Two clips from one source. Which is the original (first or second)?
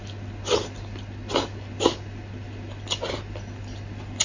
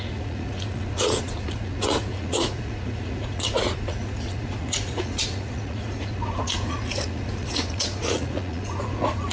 first